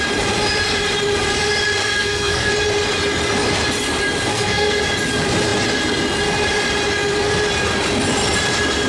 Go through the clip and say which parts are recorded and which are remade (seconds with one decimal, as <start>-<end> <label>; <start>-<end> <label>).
0.0-1.8 recorded; 1.8-2.5 remade; 2.5-4.3 recorded; 4.3-4.8 remade; 4.8-8.9 recorded